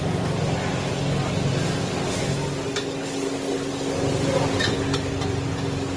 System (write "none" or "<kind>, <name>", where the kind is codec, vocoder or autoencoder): none